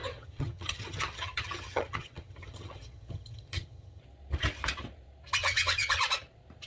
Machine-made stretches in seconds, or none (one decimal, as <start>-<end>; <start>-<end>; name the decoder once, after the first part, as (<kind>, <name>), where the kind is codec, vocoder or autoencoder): 0.0-4.0 (vocoder, HiFi-GAN); 5.4-6.0